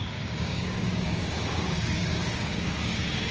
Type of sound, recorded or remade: remade